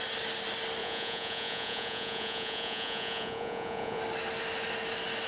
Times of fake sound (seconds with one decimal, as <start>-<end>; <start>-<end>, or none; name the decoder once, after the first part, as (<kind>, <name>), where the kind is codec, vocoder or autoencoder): 0.8-4.0 (vocoder, Vocos)